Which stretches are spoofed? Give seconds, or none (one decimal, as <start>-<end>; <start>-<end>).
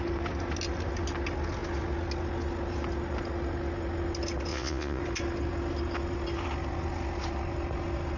4.5-5.0